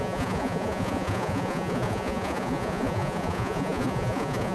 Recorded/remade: remade